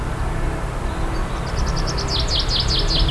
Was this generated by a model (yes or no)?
no